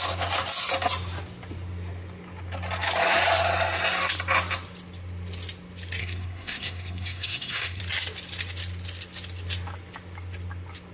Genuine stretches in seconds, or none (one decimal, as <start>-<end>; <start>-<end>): 0.0-6.0; 7.8-10.9